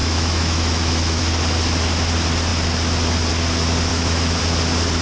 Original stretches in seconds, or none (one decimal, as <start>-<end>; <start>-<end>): 1.2-3.9; 4.4-5.0